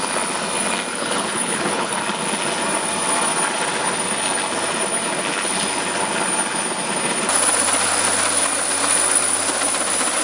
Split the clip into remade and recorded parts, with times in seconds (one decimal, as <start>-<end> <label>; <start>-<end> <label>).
0.0-0.9 recorded; 0.9-2.0 remade; 2.0-10.2 recorded